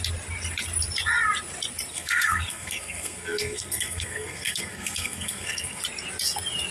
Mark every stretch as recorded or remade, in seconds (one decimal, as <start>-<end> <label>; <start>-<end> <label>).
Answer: 0.0-1.9 recorded; 1.9-5.8 remade; 5.8-6.7 recorded